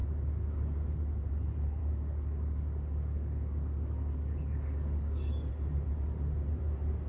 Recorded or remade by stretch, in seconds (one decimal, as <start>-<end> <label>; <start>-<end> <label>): 0.0-1.8 recorded; 1.8-5.5 remade; 5.5-7.1 recorded